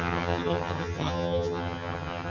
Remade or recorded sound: remade